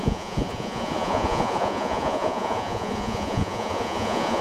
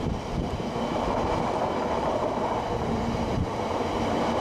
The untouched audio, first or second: second